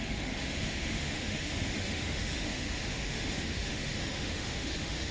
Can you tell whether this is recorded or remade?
remade